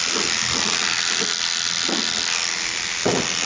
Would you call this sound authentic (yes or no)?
yes